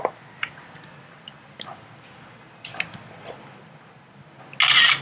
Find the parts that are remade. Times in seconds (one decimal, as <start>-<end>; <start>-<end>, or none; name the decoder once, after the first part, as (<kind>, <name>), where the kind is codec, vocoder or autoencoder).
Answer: none